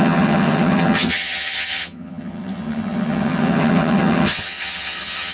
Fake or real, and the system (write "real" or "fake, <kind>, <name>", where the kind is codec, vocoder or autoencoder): fake, vocoder, HiFi-GAN